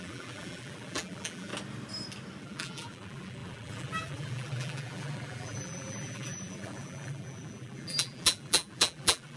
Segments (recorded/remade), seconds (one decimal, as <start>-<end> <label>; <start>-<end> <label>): 0.0-1.5 remade; 1.5-2.4 recorded; 2.4-9.4 remade